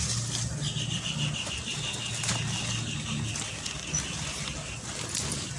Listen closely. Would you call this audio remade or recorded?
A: recorded